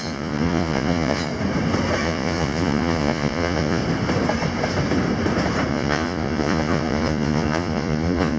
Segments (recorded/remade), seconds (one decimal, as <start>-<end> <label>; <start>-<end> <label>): 0.0-1.3 remade; 1.3-2.0 recorded; 2.0-3.8 remade; 3.8-5.7 recorded; 5.7-8.4 remade